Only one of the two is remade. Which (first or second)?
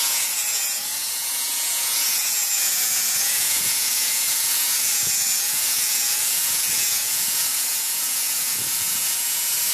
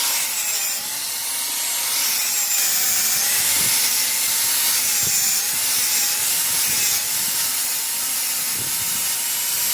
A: first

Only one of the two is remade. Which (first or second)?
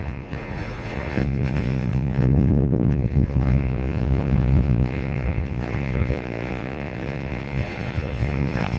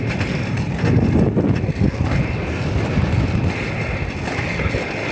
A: first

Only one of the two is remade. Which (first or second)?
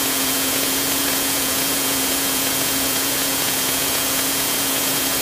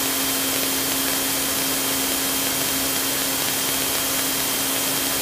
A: first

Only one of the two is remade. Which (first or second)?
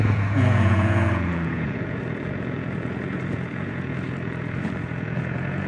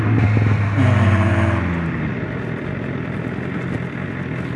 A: first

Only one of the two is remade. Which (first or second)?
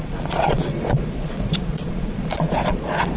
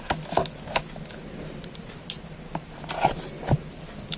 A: first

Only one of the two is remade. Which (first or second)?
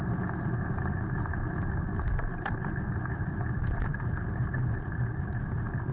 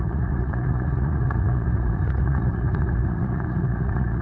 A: second